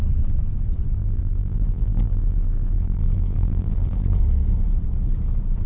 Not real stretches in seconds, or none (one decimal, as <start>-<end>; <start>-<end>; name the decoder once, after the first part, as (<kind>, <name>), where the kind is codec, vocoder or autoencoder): 1.0-4.2 (vocoder, BigVGAN v2)